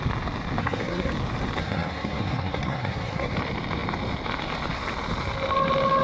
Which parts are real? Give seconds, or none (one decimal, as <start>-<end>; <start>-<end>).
0.0-0.6; 1.1-1.6; 3.3-6.0